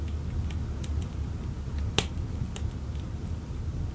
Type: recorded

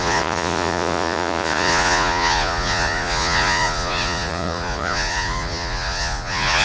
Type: remade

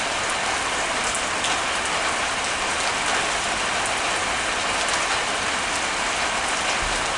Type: recorded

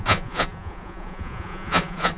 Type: remade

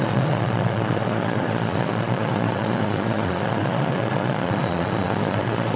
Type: remade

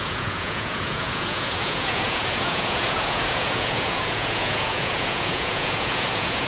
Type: remade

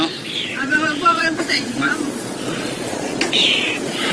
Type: remade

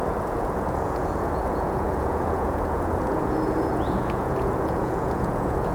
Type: remade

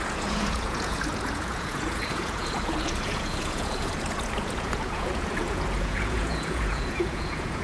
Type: remade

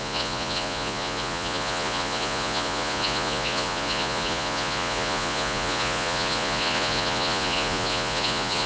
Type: remade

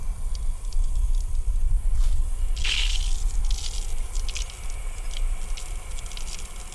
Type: recorded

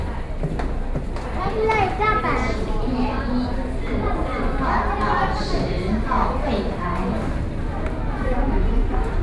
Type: recorded